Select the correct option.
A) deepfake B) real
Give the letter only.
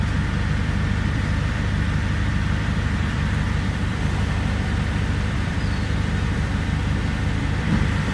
A